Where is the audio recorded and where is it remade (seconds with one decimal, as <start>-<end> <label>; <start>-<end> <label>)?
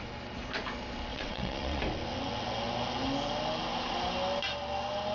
0.0-1.1 recorded; 1.1-1.8 remade; 1.8-5.1 recorded